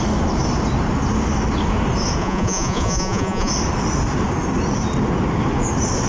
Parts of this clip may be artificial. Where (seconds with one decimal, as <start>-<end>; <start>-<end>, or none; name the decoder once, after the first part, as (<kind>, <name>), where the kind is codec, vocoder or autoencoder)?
2.2-3.5 (vocoder, Vocos)